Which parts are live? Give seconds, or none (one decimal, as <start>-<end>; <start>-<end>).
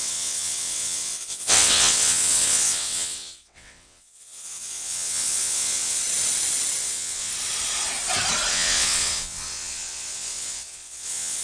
6.0-6.8; 7.3-8.5